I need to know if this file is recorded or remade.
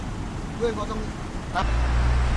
recorded